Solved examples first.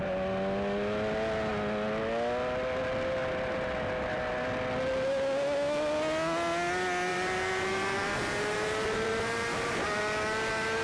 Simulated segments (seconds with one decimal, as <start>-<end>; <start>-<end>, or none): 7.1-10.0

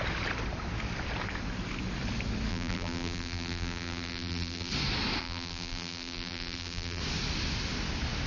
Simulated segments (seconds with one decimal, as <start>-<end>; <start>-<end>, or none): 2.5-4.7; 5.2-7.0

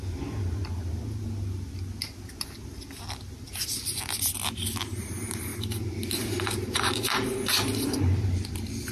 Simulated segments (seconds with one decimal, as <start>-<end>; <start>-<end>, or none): 4.8-5.5; 6.3-8.9